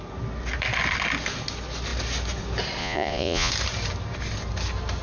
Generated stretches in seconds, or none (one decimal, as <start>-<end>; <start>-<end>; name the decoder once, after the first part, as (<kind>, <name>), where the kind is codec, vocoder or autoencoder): 2.8-3.5 (vocoder, Vocos)